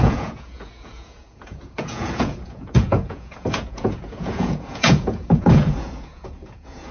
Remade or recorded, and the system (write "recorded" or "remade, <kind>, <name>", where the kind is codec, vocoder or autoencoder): remade, vocoder, Vocos